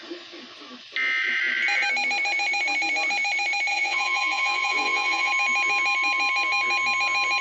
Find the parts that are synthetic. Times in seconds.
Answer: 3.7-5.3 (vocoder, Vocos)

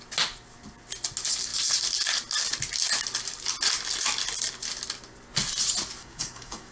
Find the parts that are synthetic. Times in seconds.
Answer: 6.0-6.7 (codec, DAC)